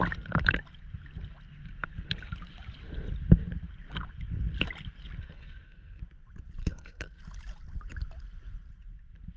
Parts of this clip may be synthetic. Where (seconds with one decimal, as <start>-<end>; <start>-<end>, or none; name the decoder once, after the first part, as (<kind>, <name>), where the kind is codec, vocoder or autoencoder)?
5.2-6.0 (codec, SNAC); 6.6-7.2